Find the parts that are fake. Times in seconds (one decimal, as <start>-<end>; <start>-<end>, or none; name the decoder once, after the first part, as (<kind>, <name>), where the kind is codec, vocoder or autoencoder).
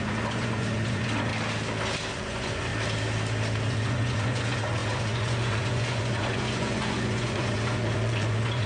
0.0-1.3 (vocoder, Vocos); 2.1-2.7; 3.6-8.7